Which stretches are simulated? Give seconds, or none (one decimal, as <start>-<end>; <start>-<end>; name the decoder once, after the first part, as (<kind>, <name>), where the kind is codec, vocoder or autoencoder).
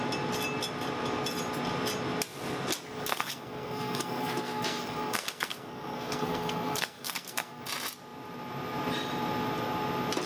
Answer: 3.1-7.6 (codec, SNAC)